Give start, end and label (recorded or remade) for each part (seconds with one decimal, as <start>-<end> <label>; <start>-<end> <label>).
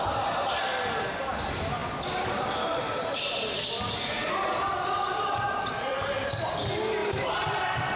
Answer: 0.0-1.8 recorded; 1.8-6.5 remade; 6.5-7.0 recorded; 7.0-7.6 remade; 7.6-8.0 recorded